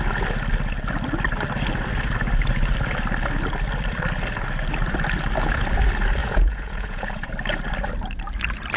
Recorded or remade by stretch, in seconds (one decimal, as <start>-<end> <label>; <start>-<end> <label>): 0.0-6.2 recorded; 6.2-7.3 remade; 7.3-8.8 recorded